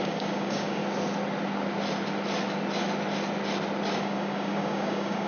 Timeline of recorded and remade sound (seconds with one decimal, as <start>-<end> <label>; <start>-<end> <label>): 0.0-0.8 remade; 0.8-4.0 recorded; 4.0-5.3 remade

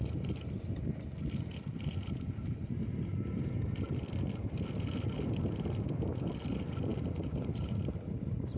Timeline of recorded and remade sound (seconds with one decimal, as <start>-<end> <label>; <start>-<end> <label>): 0.0-8.6 recorded

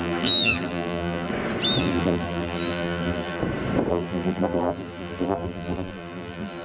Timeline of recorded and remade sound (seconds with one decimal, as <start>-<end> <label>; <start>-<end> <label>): 0.0-1.3 remade; 1.3-1.8 recorded; 1.8-3.4 remade; 3.4-3.9 recorded; 3.9-6.6 remade